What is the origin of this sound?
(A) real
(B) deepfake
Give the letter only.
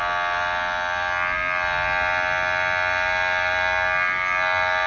A